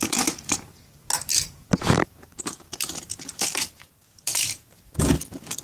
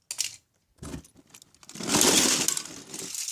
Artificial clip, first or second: first